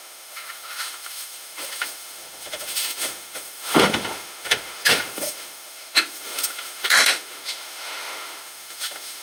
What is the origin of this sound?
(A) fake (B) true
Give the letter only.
A